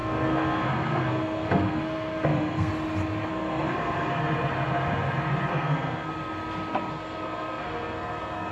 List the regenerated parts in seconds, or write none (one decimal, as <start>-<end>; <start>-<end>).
0.0-2.7; 3.3-4.2; 5.5-6.1; 6.9-8.5